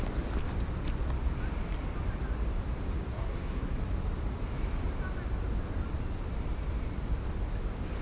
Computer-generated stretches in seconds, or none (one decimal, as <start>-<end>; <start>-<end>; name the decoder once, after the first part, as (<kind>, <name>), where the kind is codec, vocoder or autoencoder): 3.1-3.8 (codec, SNAC)